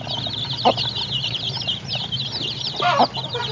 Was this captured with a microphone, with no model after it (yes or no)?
yes